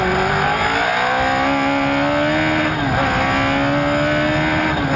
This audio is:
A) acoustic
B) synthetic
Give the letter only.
A